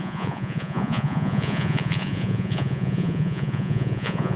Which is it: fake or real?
fake